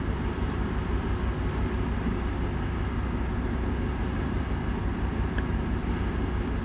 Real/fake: real